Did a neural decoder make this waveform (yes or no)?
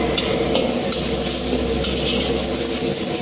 no